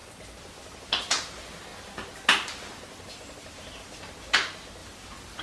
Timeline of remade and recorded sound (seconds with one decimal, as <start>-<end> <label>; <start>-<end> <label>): 0.0-0.9 remade; 0.9-4.8 recorded; 4.8-5.4 remade